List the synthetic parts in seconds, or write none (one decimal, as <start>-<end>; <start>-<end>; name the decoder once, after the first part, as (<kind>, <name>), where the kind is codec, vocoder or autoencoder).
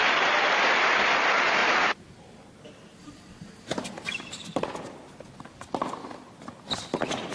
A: 1.6-2.5 (vocoder, BigVGAN v2); 2.9-4.8